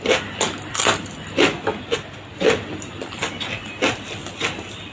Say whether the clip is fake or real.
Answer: real